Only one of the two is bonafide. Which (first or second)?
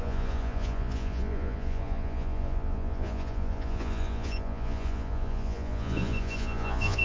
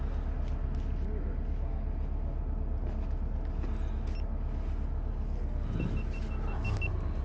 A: second